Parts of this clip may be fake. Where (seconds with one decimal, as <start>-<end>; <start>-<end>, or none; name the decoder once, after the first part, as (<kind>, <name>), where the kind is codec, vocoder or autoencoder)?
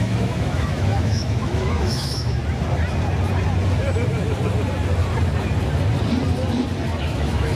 0.0-2.4 (autoencoder, DAC-VAE); 7.0-7.6